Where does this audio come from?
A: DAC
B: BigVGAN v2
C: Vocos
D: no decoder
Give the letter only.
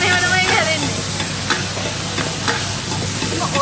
D